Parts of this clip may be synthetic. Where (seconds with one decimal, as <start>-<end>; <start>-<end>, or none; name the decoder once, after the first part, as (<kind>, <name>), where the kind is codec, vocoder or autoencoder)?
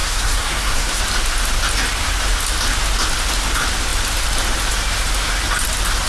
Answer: 0.0-1.0 (codec, SNAC)